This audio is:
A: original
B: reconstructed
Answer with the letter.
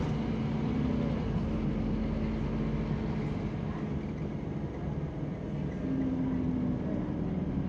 A